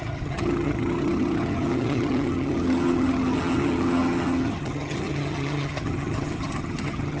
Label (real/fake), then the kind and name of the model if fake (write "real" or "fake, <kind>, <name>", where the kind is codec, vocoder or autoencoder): fake, vocoder, HiFi-GAN